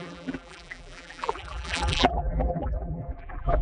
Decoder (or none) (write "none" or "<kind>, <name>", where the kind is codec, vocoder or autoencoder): vocoder, BigVGAN v2